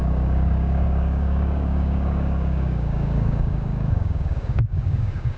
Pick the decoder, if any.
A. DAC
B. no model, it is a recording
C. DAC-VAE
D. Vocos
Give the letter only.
A